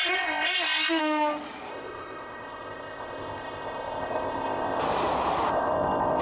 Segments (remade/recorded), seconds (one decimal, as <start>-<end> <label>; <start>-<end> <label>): 0.0-1.0 remade; 1.0-1.7 recorded; 1.7-4.8 remade; 4.8-5.5 recorded; 5.5-6.2 remade